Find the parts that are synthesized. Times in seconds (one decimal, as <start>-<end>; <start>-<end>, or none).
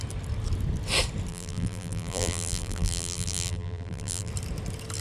1.3-4.3